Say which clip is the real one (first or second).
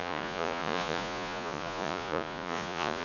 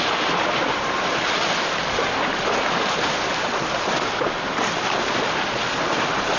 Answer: second